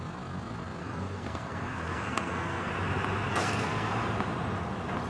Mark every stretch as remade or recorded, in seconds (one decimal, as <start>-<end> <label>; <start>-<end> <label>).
0.0-0.8 recorded; 0.8-2.7 remade; 2.7-3.3 recorded; 3.3-3.9 remade; 3.9-5.1 recorded